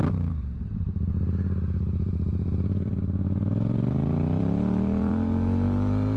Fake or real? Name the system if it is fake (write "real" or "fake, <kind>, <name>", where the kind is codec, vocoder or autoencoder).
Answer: fake, vocoder, BigVGAN v2